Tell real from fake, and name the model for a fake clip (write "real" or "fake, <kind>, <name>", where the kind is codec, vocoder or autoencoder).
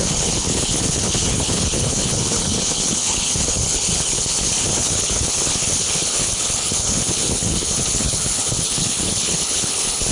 fake, codec, HILCodec